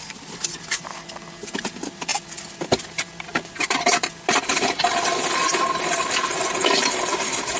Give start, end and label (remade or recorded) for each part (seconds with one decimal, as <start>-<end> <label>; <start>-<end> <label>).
0.0-2.1 recorded; 2.1-6.4 remade; 6.4-7.6 recorded